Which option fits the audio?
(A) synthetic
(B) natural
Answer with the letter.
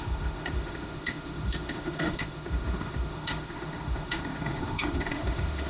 A